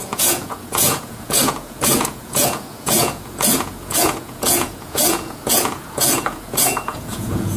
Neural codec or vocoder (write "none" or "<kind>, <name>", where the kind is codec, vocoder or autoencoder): vocoder, Vocos